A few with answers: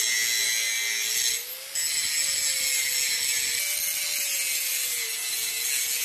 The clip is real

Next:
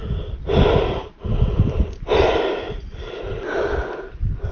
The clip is real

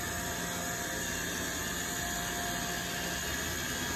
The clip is real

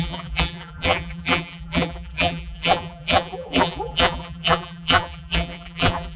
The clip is fake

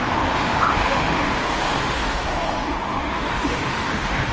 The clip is fake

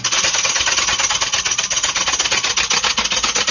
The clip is real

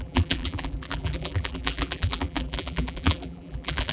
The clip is fake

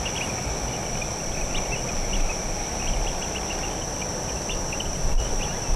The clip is real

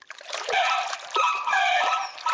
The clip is fake